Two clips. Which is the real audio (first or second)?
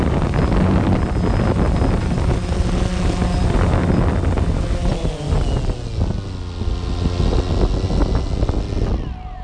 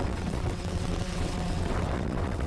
first